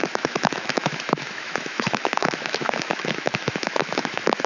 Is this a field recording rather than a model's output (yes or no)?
no